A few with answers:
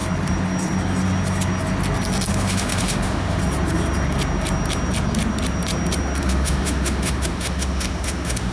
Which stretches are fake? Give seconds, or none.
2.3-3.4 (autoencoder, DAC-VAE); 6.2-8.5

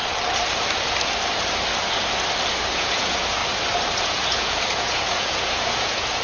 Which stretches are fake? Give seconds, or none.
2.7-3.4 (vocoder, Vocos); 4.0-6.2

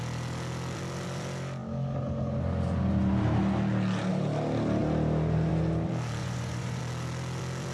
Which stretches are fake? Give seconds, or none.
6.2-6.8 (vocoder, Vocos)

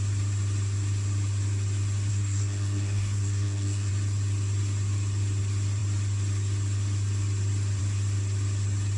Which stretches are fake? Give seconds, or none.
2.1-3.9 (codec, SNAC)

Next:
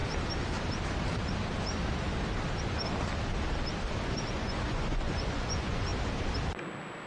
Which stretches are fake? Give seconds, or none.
4.3-5.9 (vocoder, Vocos)

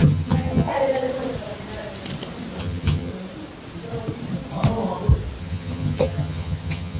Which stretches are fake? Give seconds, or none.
0.0-0.7 (vocoder, HiFi-GAN); 2.6-3.1; 5.4-7.0

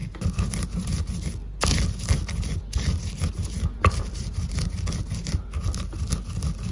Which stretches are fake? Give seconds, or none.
none

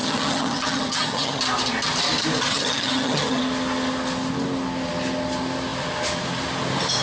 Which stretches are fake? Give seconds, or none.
0.0-1.4 (vocoder, HiFi-GAN); 2.5-3.4